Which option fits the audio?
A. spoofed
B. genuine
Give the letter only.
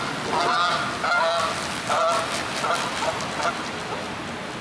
B